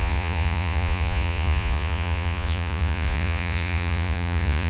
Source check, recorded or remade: remade